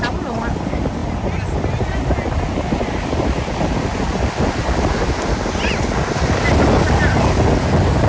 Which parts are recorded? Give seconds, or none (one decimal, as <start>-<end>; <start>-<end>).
0.0-8.1